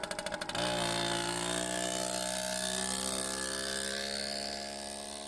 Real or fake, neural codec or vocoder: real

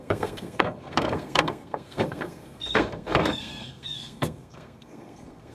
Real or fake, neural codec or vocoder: fake, codec, SNAC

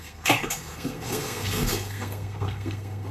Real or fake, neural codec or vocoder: fake, codec, SNAC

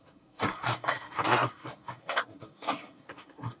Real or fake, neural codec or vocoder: fake, codec, SNAC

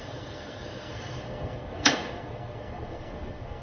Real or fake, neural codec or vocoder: fake, codec, SNAC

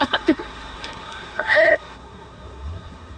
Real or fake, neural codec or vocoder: fake, codec, SNAC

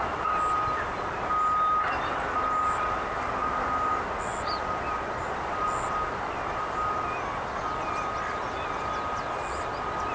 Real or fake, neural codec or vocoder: real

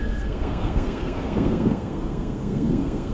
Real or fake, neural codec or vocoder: fake, codec, SNAC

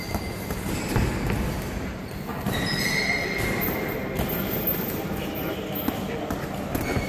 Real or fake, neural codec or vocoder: real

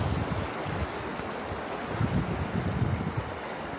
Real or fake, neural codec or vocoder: real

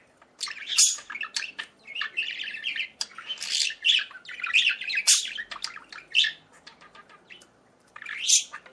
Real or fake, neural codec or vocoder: real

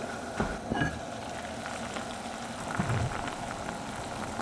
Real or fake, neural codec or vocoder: real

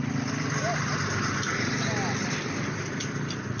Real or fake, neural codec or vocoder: real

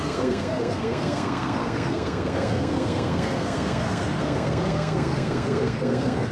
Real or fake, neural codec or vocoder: fake, codec, SNAC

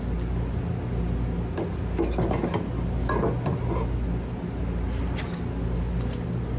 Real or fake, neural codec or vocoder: real